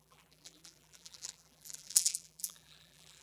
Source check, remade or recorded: remade